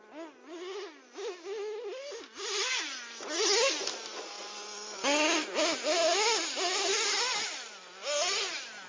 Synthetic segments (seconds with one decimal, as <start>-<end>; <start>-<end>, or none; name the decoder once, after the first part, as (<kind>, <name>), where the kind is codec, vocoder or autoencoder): none